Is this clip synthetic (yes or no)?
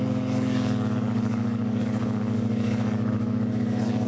yes